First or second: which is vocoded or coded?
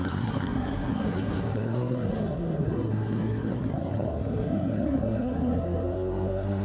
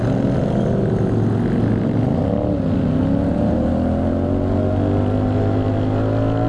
first